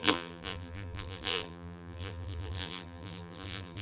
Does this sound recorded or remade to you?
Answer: remade